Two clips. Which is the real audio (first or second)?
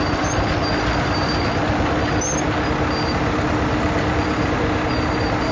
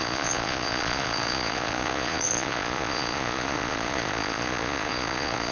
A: first